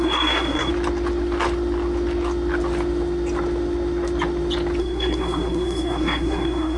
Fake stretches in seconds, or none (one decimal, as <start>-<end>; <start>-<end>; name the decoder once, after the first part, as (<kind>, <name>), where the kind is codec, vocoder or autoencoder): 0.0-0.7 (codec, SNAC); 4.8-6.8